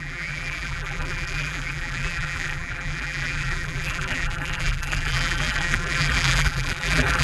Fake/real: fake